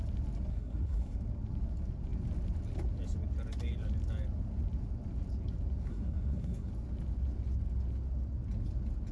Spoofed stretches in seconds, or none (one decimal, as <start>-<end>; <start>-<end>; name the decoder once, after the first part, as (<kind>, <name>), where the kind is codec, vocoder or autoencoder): 0.5-1.2 (codec, SNAC); 5.9-6.7